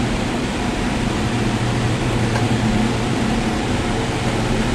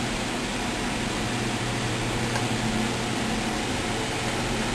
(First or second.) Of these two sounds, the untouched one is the second